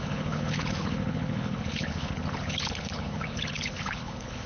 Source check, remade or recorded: remade